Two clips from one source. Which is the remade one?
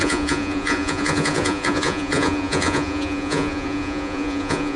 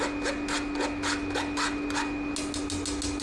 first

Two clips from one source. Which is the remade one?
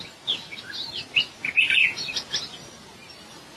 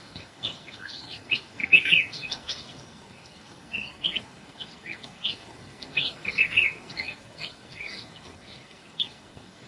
second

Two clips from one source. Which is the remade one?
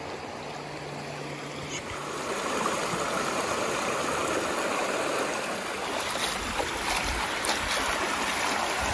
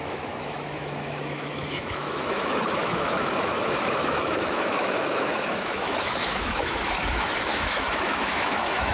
second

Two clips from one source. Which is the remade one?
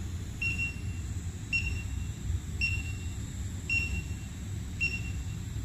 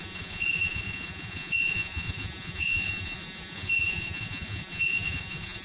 second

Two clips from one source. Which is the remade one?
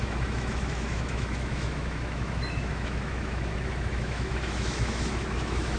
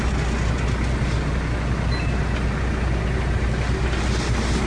first